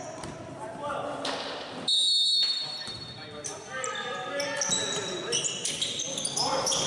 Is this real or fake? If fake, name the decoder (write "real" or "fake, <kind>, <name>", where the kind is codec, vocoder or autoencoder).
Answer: real